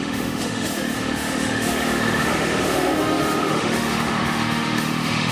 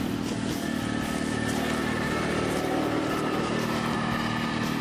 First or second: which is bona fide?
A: second